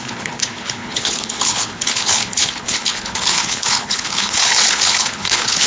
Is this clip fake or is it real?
fake